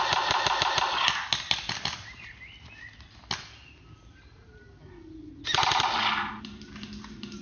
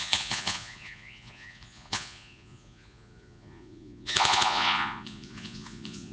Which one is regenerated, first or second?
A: second